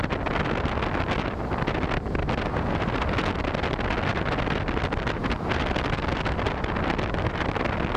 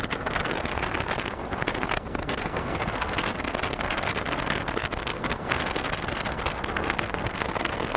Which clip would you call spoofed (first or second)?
second